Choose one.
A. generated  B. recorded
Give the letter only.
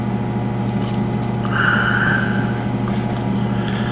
B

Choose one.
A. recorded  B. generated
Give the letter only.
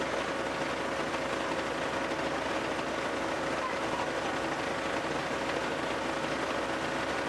A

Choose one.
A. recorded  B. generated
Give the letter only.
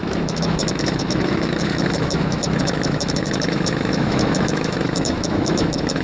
B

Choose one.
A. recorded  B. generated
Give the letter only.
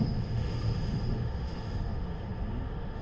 B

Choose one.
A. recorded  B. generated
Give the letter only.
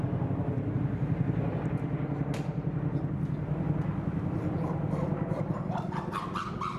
A